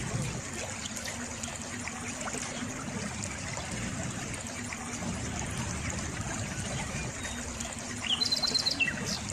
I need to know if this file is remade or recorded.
recorded